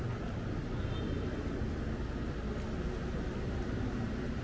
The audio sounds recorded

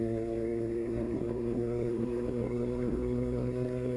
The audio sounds remade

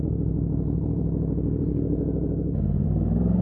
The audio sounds remade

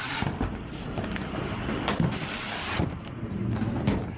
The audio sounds recorded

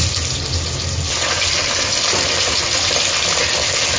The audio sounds recorded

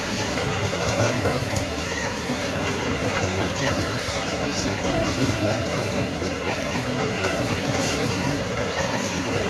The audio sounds remade